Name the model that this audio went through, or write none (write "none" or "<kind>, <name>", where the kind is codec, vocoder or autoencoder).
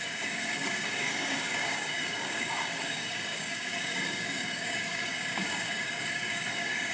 codec, DAC